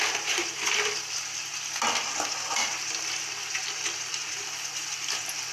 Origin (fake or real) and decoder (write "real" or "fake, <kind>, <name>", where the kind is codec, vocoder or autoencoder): real